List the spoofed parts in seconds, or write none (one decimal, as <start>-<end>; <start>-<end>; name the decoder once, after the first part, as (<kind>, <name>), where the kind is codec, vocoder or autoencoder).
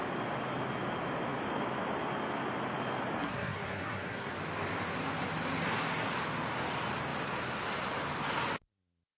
3.2-4.3 (codec, SNAC)